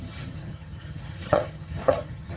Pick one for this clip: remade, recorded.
remade